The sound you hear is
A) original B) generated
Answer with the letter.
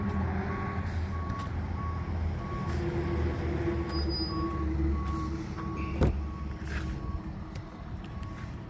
A